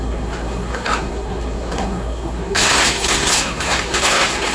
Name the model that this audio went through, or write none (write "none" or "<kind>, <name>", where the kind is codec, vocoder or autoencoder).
codec, SNAC